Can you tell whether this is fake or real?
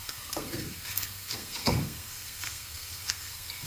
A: fake